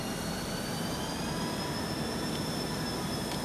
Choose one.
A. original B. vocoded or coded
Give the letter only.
A